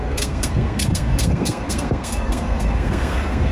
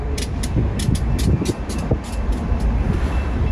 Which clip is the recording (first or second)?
second